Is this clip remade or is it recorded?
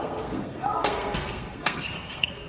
remade